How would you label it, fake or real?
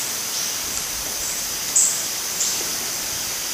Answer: real